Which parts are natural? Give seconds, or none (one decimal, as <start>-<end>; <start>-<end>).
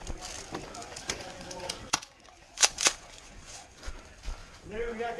0.0-0.8; 3.9-4.4